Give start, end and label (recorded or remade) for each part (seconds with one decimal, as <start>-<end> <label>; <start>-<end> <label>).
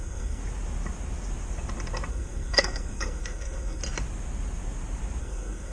0.0-0.4 remade; 0.4-2.1 recorded; 2.1-3.8 remade; 3.8-5.2 recorded; 5.2-5.7 remade